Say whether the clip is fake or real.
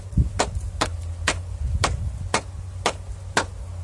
real